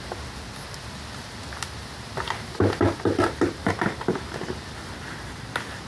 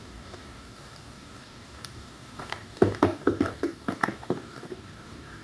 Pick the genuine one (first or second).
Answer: first